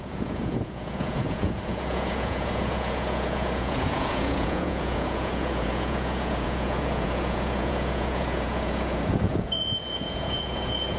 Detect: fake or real fake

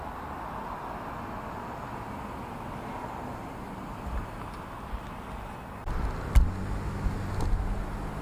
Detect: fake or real real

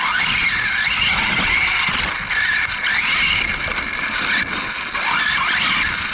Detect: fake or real real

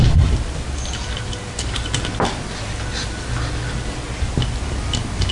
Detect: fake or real real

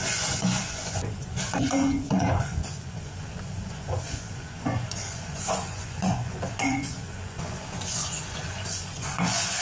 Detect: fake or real fake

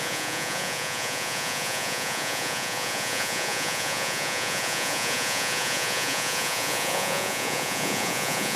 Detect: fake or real fake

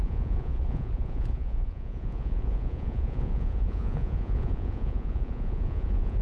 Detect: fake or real fake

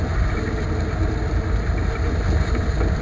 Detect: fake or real real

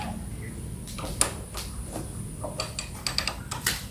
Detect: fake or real real